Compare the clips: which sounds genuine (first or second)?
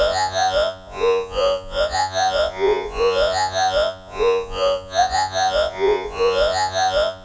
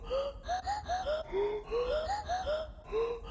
second